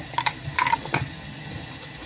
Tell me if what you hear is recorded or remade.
recorded